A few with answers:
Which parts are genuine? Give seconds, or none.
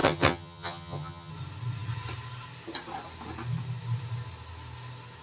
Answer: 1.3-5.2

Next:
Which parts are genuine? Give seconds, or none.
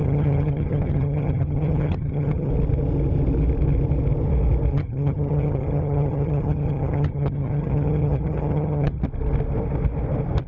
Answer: 2.5-4.7; 9.0-10.5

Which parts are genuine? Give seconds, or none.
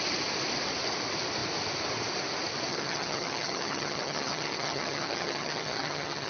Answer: 0.0-2.7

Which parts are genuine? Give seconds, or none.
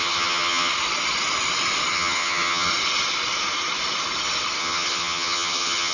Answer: 0.7-1.9; 2.7-4.6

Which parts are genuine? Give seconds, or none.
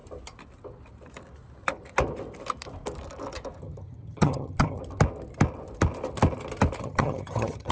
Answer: 0.0-3.6; 4.8-6.8